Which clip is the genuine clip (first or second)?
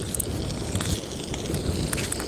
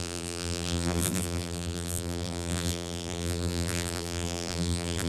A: first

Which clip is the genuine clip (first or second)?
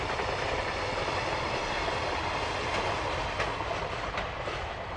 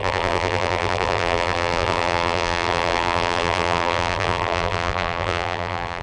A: first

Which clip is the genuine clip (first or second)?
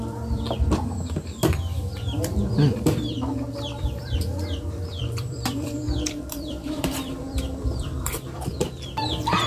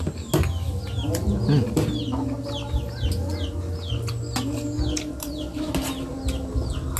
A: second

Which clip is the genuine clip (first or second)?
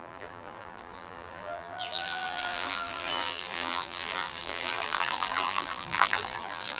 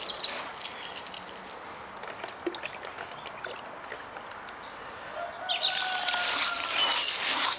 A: second